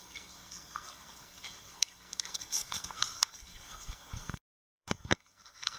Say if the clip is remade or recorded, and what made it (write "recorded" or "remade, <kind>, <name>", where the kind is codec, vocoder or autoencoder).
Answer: remade, codec, SNAC